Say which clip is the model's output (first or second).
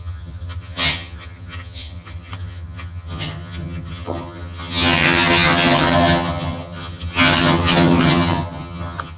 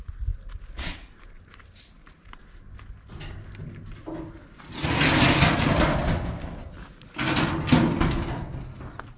first